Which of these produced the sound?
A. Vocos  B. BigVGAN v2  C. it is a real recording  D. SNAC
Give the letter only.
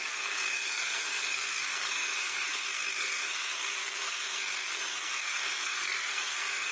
D